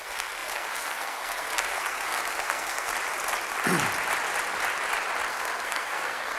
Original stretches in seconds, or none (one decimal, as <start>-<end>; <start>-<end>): 2.9-5.3

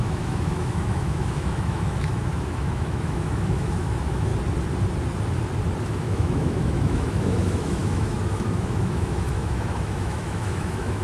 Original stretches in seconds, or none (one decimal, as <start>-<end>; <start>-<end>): 4.3-5.8

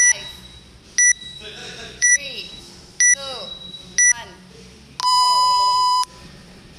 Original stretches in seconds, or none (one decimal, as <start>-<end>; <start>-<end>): 0.0-1.6; 2.6-5.0

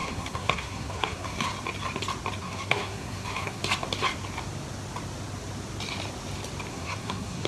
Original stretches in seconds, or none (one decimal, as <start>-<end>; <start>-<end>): 1.5-2.4; 3.6-6.7

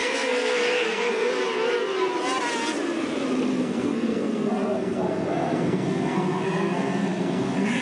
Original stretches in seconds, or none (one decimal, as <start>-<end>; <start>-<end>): 1.3-3.5

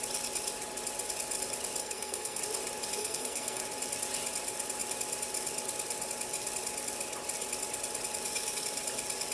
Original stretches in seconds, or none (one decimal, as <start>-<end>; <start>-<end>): 0.0-1.8; 2.4-3.0; 3.6-9.3

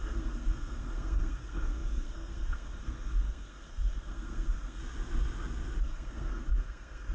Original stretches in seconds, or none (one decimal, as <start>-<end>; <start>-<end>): 4.8-5.8

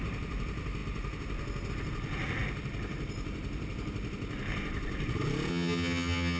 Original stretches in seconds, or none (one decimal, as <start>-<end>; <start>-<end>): 0.0-5.5